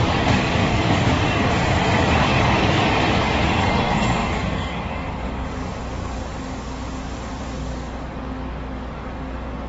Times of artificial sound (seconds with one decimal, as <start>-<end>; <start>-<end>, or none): 0.0-9.7